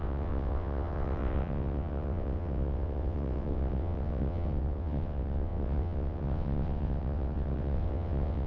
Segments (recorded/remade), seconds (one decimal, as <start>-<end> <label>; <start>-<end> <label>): 0.0-8.5 remade